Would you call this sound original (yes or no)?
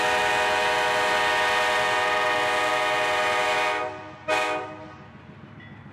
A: yes